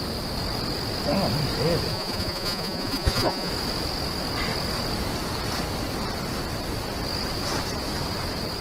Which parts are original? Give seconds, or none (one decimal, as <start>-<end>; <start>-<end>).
0.0-1.9; 3.5-8.6